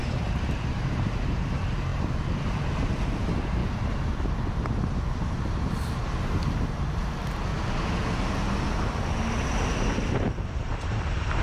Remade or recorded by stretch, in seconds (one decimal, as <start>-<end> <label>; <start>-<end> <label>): 0.0-3.6 remade; 3.6-5.3 recorded; 5.3-7.5 remade; 7.5-10.1 recorded; 10.1-11.4 remade